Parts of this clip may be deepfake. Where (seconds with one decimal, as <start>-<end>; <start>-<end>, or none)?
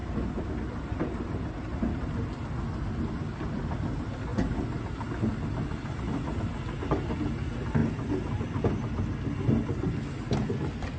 none